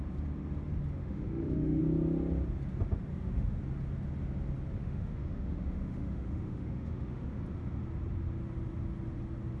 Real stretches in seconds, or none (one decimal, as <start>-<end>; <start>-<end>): 0.0-1.0; 1.8-3.1; 3.6-4.8; 7.4-9.6